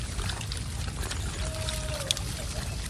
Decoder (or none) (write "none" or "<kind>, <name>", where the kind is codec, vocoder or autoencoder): none